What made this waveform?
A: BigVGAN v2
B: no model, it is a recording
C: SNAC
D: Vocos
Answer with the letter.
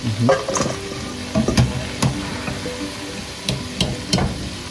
B